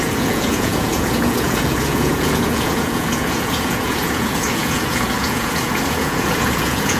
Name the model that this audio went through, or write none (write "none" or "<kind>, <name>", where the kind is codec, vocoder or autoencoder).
vocoder, Vocos